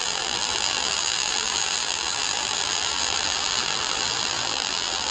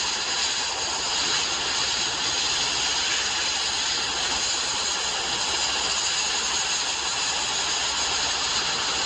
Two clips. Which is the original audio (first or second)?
second